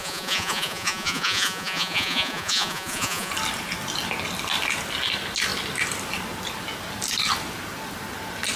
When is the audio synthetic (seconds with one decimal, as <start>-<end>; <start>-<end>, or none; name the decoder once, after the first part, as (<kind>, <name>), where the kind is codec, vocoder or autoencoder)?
0.0-3.3 (vocoder, Vocos)